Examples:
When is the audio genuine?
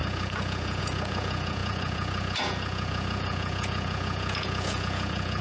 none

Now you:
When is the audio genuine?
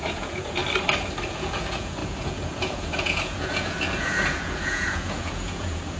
0.6-1.3